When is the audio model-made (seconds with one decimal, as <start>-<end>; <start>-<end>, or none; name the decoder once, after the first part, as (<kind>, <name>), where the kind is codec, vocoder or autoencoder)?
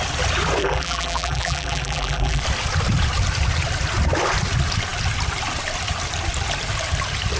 0.6-2.4 (vocoder, BigVGAN v2)